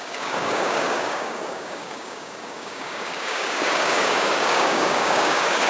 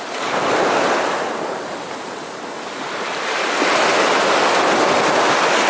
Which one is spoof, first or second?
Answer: first